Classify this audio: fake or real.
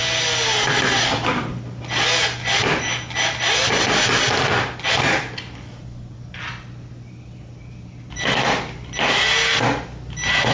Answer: real